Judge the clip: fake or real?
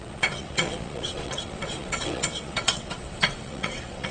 fake